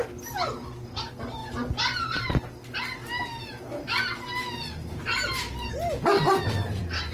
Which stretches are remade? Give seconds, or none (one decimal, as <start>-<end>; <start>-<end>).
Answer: none